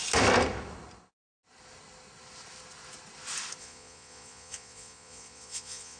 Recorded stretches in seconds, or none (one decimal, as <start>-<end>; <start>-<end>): 0.0-3.6